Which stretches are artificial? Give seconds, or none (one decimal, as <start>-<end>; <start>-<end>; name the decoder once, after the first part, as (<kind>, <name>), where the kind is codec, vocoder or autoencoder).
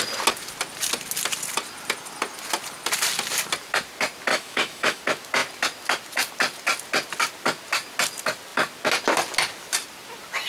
4.3-5.0 (autoencoder, DAC-VAE)